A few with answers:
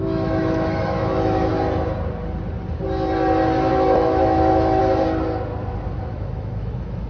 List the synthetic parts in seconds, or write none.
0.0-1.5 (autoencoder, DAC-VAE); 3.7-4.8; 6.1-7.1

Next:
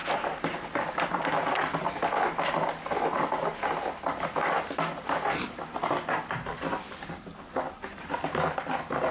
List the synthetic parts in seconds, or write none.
none

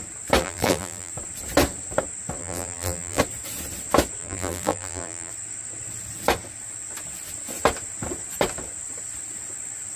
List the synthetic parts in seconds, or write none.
0.4-1.1 (vocoder, BigVGAN v2); 2.4-3.2; 4.2-5.3

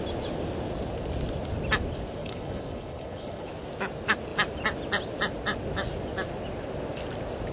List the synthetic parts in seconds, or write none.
2.2-3.5 (codec, HILCodec)

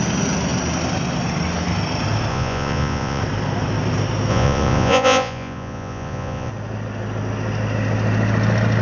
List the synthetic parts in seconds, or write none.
2.3-3.2 (vocoder, Vocos); 4.3-6.5